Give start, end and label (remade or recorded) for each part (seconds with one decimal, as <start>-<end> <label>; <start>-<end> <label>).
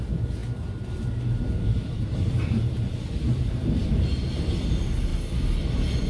0.0-6.1 recorded